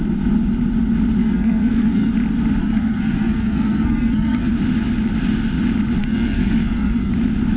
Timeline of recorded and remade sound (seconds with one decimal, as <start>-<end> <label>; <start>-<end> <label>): 0.0-1.2 recorded; 1.2-2.1 remade; 2.1-2.6 recorded; 2.6-4.5 remade; 4.5-6.0 recorded; 6.0-7.1 remade; 7.1-7.6 recorded